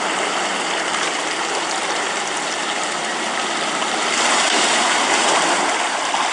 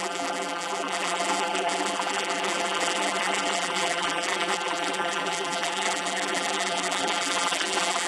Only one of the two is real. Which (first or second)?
first